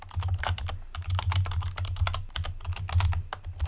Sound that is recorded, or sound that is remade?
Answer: recorded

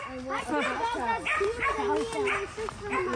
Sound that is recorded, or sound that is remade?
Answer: recorded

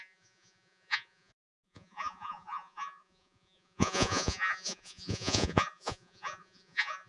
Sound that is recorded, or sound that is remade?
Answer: remade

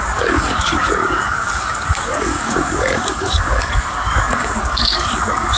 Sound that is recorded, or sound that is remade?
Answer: remade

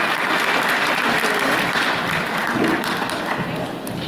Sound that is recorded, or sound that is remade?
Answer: recorded